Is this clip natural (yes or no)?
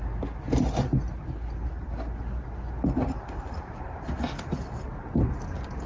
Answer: yes